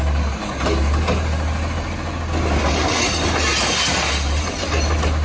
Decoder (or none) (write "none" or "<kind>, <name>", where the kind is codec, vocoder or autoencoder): none